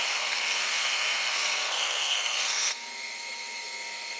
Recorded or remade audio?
remade